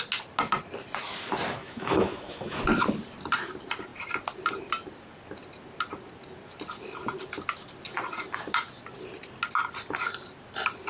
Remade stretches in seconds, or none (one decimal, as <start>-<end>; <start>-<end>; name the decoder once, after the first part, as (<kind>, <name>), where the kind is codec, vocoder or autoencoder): 1.6-2.6 (autoencoder, DAC-VAE)